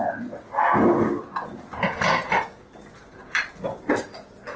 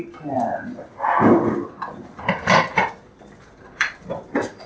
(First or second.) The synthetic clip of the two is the second